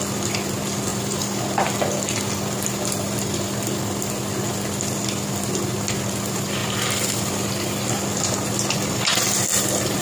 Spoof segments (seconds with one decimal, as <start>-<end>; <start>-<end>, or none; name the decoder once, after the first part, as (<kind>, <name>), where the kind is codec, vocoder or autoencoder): 0.9-4.1 (vocoder, BigVGAN v2); 6.6-7.3